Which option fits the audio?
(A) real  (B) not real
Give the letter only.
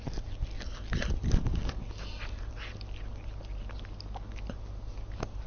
A